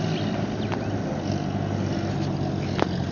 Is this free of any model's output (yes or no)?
yes